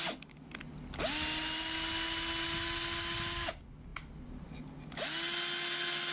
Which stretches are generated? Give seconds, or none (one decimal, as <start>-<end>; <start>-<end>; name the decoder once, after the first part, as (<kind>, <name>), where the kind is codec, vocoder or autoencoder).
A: none